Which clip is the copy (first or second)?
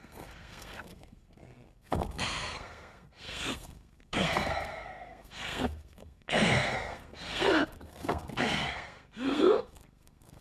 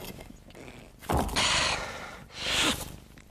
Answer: first